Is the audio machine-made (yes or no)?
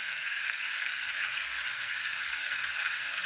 yes